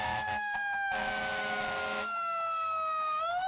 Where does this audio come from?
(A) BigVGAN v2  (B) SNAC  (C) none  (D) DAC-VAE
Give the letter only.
D